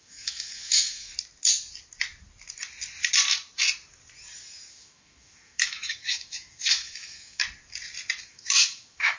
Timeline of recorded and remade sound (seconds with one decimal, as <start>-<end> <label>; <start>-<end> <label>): 0.0-1.1 remade; 1.1-4.7 recorded; 4.7-7.4 remade; 7.4-8.2 recorded; 8.2-9.2 remade